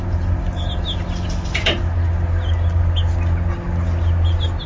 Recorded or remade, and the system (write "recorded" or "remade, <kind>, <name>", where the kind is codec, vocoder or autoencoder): recorded